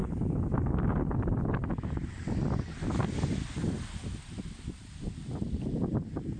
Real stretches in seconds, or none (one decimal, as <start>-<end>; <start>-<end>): 0.0-4.0; 4.9-6.4

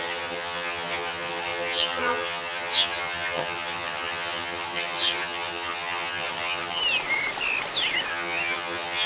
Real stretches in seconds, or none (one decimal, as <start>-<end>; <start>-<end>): 6.8-8.1

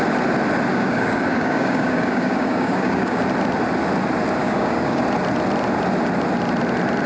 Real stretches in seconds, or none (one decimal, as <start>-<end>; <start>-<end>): 0.0-0.7; 3.2-4.4; 5.0-7.1

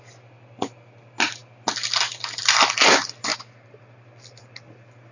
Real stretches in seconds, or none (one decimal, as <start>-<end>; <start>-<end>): 0.0-3.3; 3.8-5.1

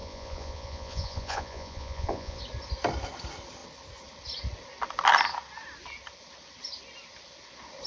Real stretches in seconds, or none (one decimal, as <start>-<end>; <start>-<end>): 2.4-7.9

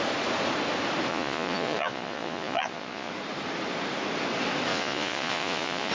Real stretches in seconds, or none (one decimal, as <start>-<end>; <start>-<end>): 0.0-1.1; 3.1-4.7